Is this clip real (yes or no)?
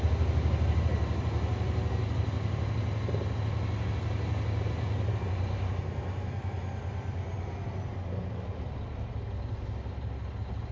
yes